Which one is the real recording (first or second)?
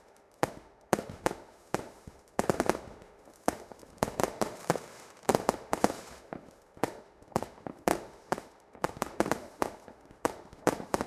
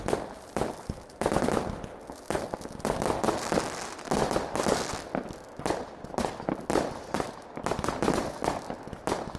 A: second